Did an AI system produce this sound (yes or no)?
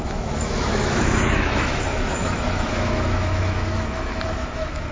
yes